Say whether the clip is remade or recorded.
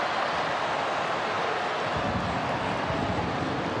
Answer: recorded